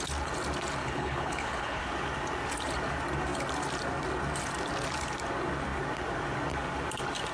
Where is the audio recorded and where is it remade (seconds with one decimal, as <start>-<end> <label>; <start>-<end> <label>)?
0.0-0.8 recorded; 0.8-1.8 remade; 1.8-7.3 recorded